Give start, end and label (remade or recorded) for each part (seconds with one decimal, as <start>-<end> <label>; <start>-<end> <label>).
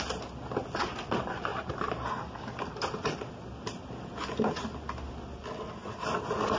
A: 0.0-6.6 recorded